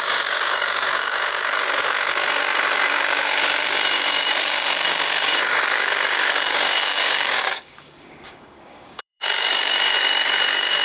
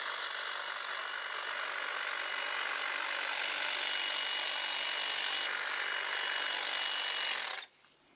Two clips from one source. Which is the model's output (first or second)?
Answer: first